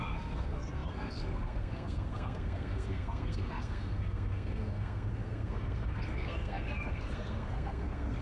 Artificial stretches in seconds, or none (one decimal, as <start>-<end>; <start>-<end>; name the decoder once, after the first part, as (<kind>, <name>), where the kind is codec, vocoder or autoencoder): 0.0-8.2 (codec, SNAC)